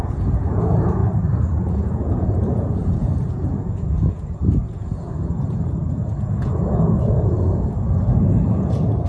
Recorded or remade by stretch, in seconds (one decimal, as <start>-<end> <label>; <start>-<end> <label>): 0.0-1.0 remade; 1.0-1.7 recorded; 1.7-9.1 remade